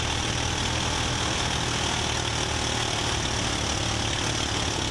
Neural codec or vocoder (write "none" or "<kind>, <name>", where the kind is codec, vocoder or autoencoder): none